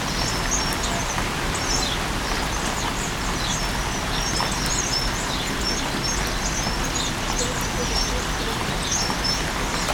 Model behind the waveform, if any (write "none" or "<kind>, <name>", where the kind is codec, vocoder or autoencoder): none